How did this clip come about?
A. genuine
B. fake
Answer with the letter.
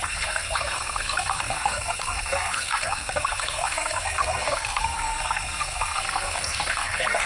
B